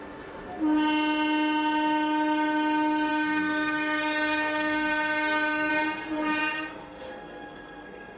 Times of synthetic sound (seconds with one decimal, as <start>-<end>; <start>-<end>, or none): 3.1-5.7; 6.4-8.2